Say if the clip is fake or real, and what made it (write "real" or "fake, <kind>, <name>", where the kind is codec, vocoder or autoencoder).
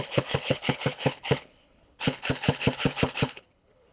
fake, codec, HILCodec